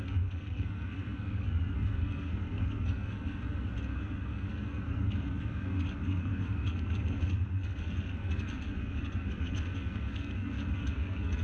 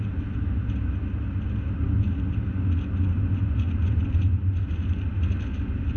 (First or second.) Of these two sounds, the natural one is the second